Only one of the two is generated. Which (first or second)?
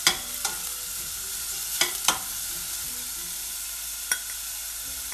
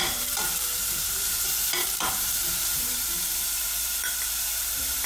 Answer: second